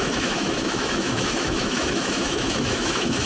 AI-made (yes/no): yes